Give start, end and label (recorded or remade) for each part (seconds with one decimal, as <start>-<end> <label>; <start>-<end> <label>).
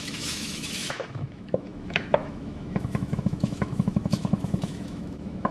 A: 0.0-5.5 remade